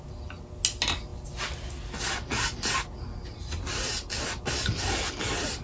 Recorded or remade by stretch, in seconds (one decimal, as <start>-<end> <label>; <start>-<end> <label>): 0.0-5.6 recorded